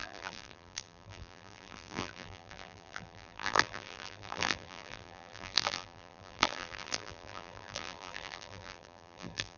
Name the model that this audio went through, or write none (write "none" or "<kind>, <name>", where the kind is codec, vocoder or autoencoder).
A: vocoder, BigVGAN v2